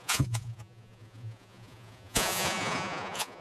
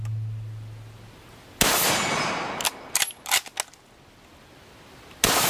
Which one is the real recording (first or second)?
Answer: second